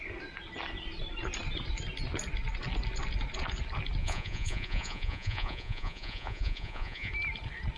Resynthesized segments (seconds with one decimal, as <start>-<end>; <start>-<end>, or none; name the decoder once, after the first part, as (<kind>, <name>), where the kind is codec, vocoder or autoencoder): 4.0-7.1 (vocoder, Vocos)